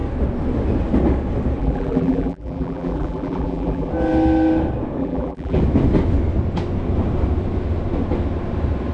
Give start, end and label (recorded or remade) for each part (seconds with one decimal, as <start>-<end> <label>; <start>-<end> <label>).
0.0-1.6 recorded; 1.6-3.9 remade; 3.9-5.0 recorded; 5.0-5.6 remade; 5.6-8.9 recorded